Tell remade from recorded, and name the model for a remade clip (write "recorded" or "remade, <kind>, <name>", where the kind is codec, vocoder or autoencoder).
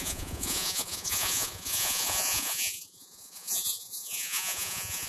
remade, vocoder, Vocos